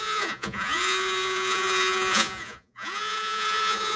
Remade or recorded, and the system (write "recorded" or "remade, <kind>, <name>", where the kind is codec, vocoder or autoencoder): remade, vocoder, Vocos